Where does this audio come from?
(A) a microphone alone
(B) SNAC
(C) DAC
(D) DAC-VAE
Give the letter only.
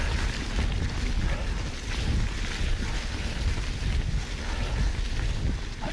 A